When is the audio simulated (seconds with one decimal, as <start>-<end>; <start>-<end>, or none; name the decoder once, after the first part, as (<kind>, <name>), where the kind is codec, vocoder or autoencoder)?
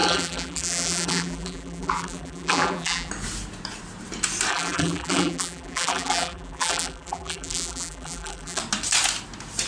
0.0-3.1 (vocoder, BigVGAN v2); 4.5-8.6